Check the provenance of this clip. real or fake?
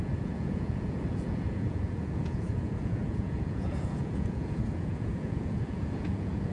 fake